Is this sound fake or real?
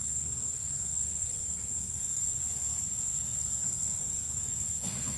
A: fake